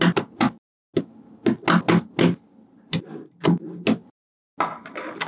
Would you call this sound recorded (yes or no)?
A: yes